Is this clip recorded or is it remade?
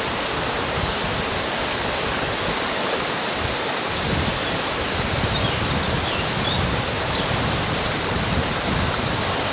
recorded